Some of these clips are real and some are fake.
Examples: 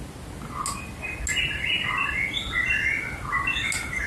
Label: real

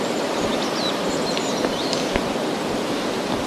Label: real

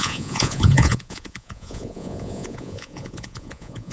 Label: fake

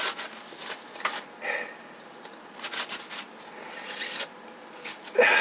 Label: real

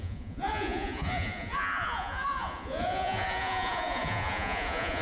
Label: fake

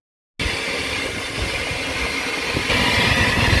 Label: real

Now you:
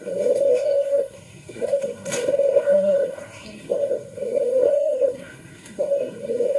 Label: fake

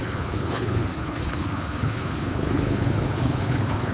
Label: fake